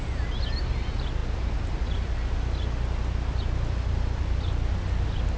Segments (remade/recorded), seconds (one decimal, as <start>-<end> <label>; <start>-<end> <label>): 0.0-5.4 recorded

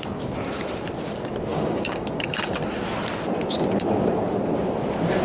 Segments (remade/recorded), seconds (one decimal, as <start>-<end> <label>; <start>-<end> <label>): 0.0-1.5 recorded; 1.5-2.5 remade; 2.5-5.2 recorded

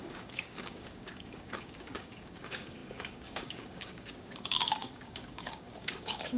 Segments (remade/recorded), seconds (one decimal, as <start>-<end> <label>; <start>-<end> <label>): 0.0-6.4 remade

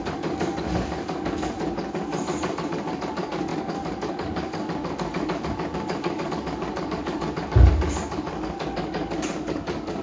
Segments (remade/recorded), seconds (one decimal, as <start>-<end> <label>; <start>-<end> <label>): 0.0-10.0 remade

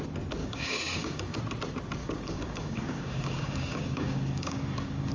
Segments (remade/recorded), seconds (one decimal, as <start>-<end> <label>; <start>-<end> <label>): 0.0-0.4 recorded; 0.4-1.4 remade; 1.4-2.0 recorded; 2.0-5.1 remade

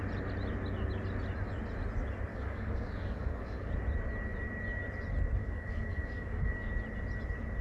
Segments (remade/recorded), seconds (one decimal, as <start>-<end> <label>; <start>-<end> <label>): 0.0-2.3 recorded; 2.3-3.7 remade; 3.7-5.4 recorded; 5.4-6.7 remade; 6.7-7.6 recorded